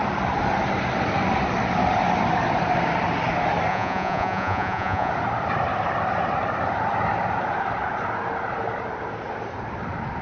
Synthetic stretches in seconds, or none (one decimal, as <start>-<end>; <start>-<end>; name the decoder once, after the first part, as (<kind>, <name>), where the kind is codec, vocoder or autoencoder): 3.7-5.1 (vocoder, Vocos)